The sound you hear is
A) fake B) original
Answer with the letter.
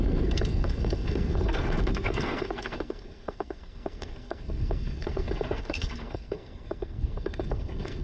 A